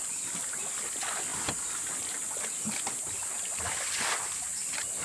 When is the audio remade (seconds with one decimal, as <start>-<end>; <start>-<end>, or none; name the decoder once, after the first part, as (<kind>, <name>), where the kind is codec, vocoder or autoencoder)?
none